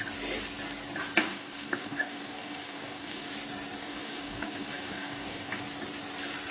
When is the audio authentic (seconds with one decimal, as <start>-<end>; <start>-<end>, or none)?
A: 0.0-1.2; 3.3-3.8; 5.6-6.5